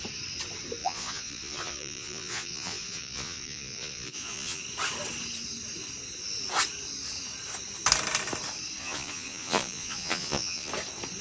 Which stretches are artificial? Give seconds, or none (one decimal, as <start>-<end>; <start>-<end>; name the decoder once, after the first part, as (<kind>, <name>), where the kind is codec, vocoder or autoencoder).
0.8-4.6 (vocoder, Vocos); 8.8-10.7